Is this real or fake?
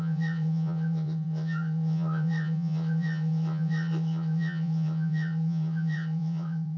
fake